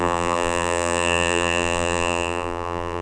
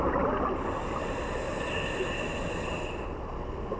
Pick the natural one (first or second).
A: second